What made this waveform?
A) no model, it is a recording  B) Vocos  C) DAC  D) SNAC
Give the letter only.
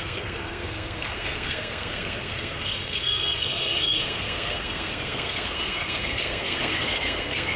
D